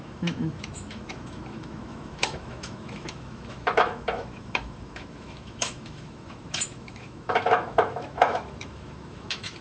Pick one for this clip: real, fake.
fake